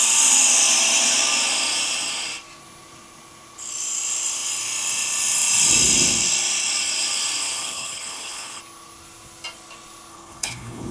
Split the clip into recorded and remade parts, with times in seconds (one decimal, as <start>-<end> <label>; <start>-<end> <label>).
0.0-7.4 recorded; 7.4-8.6 remade; 8.6-10.1 recorded; 10.1-10.9 remade